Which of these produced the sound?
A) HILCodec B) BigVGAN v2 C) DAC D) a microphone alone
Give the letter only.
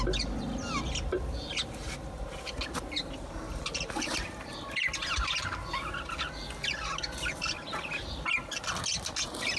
D